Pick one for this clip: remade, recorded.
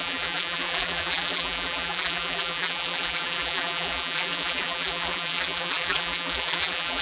remade